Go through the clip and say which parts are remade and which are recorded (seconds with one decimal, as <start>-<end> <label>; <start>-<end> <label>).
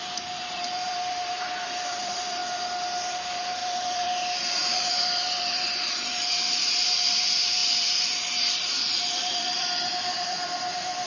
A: 0.0-2.4 remade; 2.4-3.1 recorded; 3.1-11.1 remade